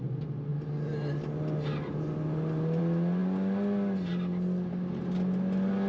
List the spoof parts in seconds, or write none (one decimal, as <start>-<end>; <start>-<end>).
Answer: none